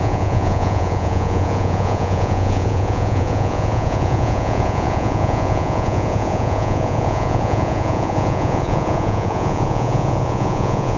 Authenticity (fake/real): fake